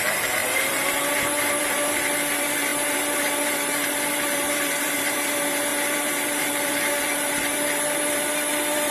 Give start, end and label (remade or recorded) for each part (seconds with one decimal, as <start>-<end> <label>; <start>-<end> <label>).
0.0-8.9 remade